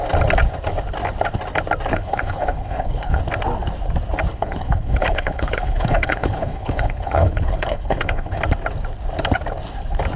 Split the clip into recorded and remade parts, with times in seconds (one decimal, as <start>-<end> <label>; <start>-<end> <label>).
0.0-1.9 recorded; 1.9-3.2 remade; 3.2-4.3 recorded; 4.3-8.4 remade; 8.4-10.2 recorded